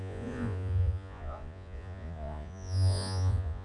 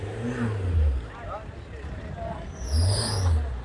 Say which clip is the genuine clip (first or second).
second